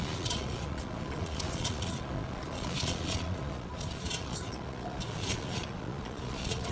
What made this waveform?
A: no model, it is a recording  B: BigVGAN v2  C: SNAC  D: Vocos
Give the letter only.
D